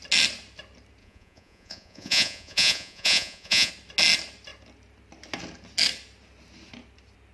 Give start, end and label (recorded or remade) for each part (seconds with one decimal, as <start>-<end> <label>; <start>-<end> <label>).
0.0-1.0 recorded; 1.0-3.7 remade; 3.7-7.3 recorded